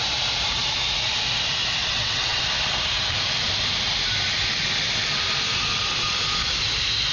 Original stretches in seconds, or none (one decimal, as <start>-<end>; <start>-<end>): 0.0-1.8; 2.4-7.1

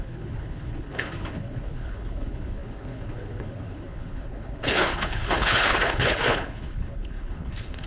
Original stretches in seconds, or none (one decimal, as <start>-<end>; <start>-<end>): none

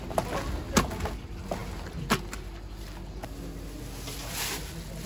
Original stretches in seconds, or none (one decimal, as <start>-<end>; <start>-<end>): 0.0-5.1

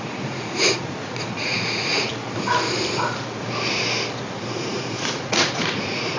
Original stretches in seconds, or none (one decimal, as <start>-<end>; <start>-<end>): 2.1-4.4

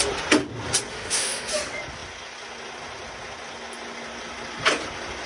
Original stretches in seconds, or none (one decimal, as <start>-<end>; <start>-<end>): 0.0-0.9; 1.5-5.3

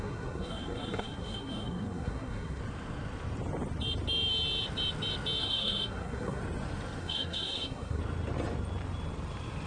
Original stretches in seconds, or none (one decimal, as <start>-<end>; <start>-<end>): 2.6-5.4; 6.4-7.0; 8.0-9.7

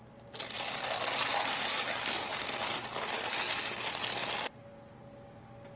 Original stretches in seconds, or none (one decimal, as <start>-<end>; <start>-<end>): 0.0-5.8

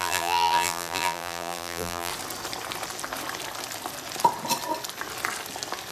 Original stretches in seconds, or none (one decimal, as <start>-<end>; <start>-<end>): 2.1-5.9